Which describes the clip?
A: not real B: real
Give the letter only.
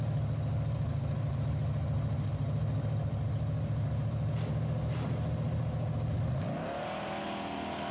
B